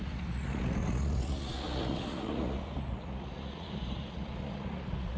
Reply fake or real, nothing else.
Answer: fake